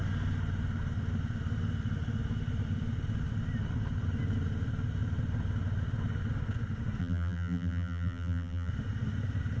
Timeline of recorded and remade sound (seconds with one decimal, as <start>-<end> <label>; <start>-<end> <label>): 0.0-7.0 recorded; 7.0-8.7 remade; 8.7-9.6 recorded